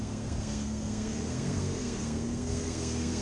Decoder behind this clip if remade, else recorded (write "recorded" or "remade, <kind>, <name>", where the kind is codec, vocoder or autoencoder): remade, codec, SNAC